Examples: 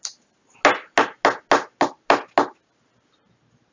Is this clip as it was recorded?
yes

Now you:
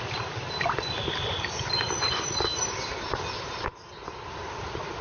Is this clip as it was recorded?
yes